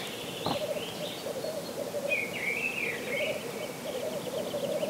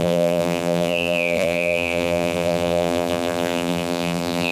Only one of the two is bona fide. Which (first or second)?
first